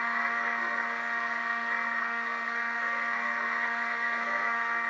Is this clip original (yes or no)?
no